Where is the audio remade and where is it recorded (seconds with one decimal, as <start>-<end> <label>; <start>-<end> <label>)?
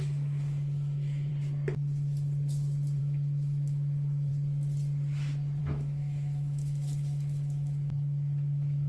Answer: 0.0-1.3 remade; 1.3-3.0 recorded; 3.0-4.3 remade; 4.3-5.6 recorded; 5.6-8.9 remade